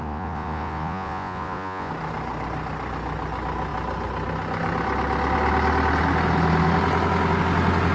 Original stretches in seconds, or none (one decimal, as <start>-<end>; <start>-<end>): 1.9-7.9